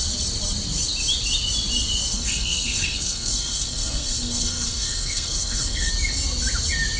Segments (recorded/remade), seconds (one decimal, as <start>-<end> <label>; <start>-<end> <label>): 0.0-2.1 recorded; 2.1-5.9 remade; 5.9-7.0 recorded